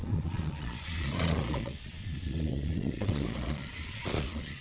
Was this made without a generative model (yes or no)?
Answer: no